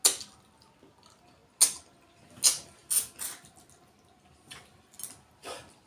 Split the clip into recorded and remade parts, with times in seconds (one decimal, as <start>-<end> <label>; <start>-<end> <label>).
0.0-5.9 recorded